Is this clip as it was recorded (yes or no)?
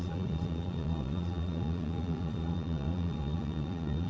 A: no